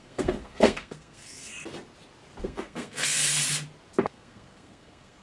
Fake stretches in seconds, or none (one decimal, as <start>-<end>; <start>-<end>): 0.0-1.5; 2.4-3.2; 4.0-5.2

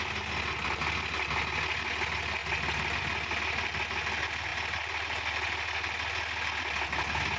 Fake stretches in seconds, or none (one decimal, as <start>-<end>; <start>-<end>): none

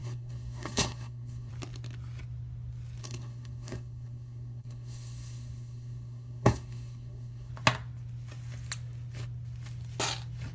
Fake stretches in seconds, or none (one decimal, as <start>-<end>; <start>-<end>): 0.0-1.5; 3.0-7.5

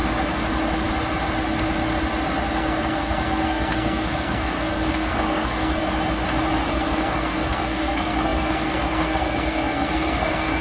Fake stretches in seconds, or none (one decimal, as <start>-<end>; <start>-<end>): 2.6-5.8; 6.7-10.6

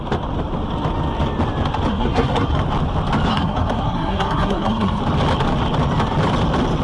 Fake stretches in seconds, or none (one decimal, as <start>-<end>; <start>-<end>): 1.9-2.6; 3.3-5.0

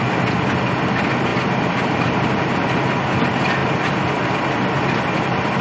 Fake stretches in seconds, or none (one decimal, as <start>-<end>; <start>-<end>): none

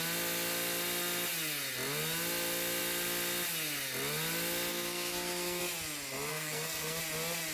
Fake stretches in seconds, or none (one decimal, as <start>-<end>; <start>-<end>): 4.7-5.6; 6.3-7.0

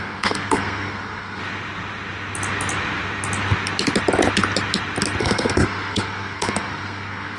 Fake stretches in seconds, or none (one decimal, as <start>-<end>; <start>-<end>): 0.0-1.4; 5.2-7.4